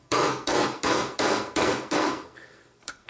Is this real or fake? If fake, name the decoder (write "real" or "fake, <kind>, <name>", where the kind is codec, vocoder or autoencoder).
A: fake, codec, SNAC